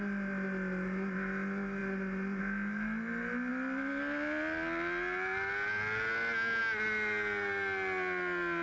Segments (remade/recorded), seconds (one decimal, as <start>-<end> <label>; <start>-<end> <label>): 0.0-8.6 recorded